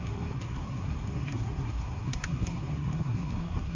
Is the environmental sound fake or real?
fake